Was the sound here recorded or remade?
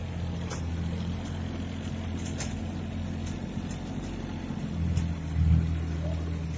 recorded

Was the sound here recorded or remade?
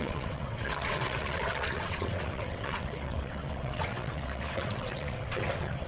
remade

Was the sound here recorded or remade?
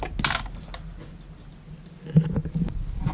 recorded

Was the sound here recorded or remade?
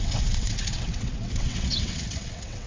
remade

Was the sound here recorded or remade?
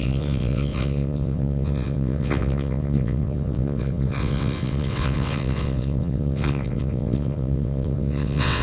remade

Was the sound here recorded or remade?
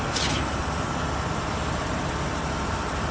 recorded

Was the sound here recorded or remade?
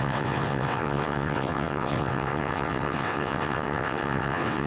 remade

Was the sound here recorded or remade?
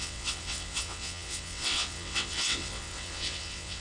remade